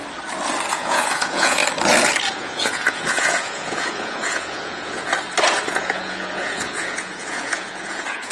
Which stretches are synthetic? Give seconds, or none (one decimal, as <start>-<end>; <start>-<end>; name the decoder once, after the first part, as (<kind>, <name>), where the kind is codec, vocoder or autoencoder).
0.7-1.6 (vocoder, Vocos); 2.3-5.1; 5.7-8.3